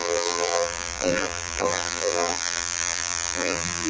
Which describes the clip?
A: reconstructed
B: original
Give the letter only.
A